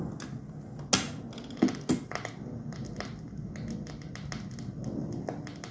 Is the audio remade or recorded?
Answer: recorded